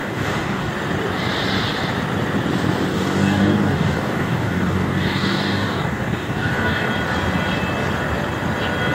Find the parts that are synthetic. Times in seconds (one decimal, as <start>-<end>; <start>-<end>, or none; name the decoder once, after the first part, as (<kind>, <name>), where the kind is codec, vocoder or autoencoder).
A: 0.0-0.7 (codec, DAC); 2.9-6.9